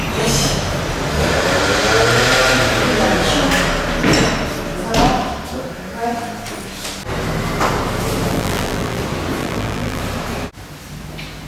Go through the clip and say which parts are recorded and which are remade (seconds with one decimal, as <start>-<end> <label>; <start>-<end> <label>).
0.0-8.3 recorded; 8.3-9.0 remade; 9.0-9.4 recorded; 9.4-10.0 remade; 10.0-11.5 recorded

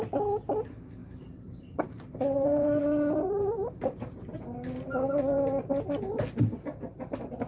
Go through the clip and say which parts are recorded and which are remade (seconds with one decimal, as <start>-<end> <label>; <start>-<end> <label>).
0.0-1.0 recorded; 1.0-4.5 remade; 4.5-7.5 recorded

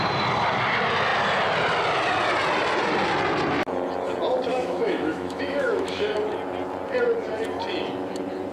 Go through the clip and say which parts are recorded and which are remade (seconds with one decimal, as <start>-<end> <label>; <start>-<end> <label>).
0.0-4.5 recorded; 4.5-6.2 remade; 6.2-8.5 recorded

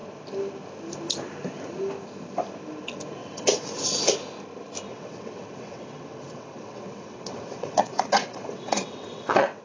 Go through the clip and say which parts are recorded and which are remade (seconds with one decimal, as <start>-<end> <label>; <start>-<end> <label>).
0.0-3.2 recorded; 3.2-3.8 remade; 3.8-4.9 recorded; 4.9-9.6 remade